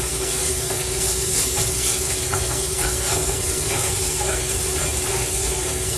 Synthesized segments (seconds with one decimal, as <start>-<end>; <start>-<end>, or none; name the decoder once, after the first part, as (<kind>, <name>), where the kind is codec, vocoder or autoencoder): 0.0-4.6 (codec, SNAC); 5.1-6.0